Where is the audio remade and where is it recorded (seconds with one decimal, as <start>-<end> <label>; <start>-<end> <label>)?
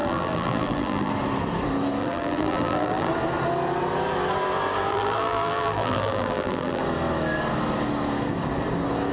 0.0-1.1 remade; 1.1-2.0 recorded; 2.0-3.1 remade; 3.1-4.9 recorded; 4.9-6.8 remade; 6.8-9.1 recorded